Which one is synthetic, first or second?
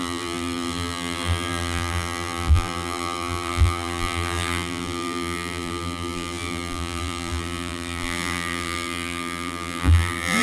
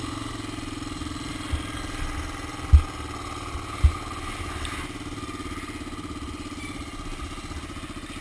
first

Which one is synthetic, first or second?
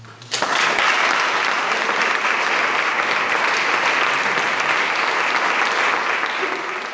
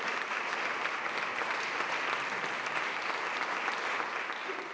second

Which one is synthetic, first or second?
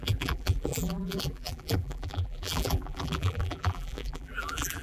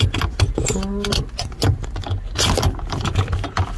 first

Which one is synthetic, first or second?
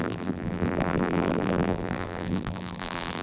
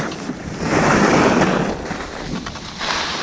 first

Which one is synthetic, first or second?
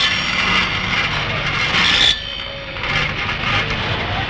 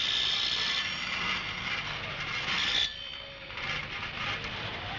second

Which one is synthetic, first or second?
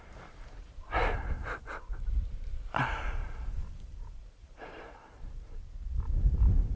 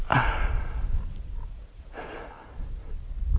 first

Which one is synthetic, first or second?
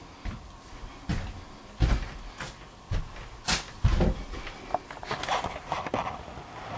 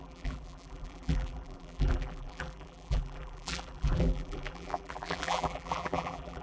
second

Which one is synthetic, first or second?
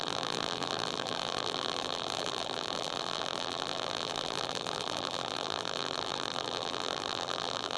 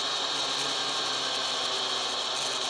first